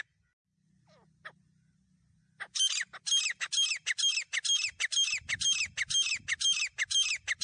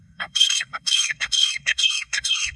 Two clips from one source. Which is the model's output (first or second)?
second